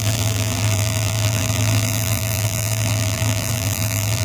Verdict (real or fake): fake